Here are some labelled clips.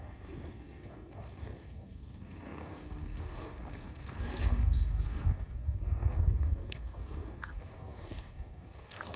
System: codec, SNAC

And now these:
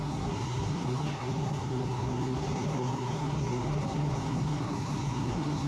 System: codec, SNAC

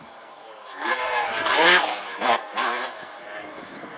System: codec, SNAC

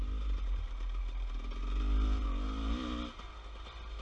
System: none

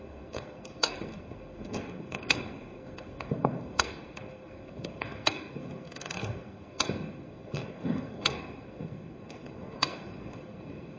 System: codec, SNAC